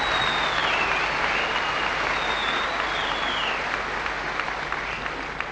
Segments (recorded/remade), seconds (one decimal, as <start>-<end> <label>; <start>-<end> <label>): 0.0-5.5 recorded